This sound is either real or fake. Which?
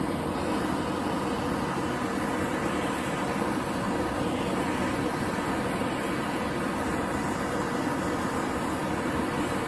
real